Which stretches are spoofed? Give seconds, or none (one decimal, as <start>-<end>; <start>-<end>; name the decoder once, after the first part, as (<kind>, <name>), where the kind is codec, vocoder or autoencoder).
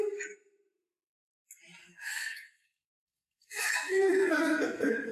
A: 1.8-5.1 (codec, SNAC)